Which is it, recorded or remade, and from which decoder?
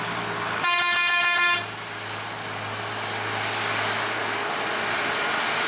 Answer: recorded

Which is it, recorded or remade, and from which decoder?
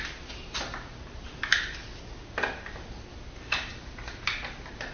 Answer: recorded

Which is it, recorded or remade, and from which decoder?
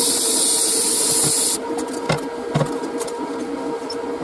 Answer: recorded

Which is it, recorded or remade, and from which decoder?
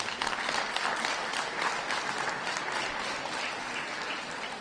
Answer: recorded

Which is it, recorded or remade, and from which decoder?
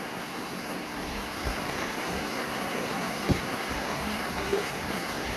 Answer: remade, codec, SNAC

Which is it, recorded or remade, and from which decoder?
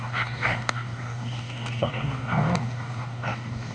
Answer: remade, codec, DAC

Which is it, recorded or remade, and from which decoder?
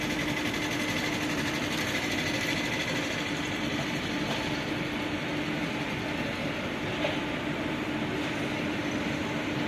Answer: recorded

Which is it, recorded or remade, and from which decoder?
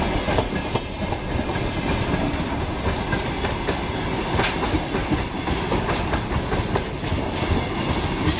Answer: recorded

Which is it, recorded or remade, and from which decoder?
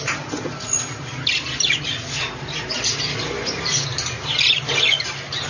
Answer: recorded